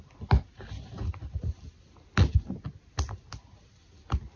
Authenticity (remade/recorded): recorded